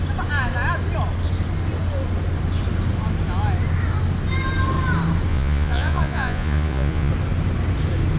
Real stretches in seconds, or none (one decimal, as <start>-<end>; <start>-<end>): 0.0-5.3; 7.1-8.2